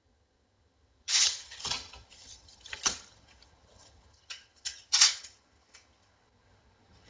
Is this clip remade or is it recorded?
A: remade